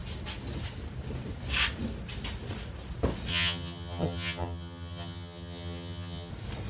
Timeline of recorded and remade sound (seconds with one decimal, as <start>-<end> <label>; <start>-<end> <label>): 0.0-3.3 recorded; 3.3-6.3 remade; 6.3-6.7 recorded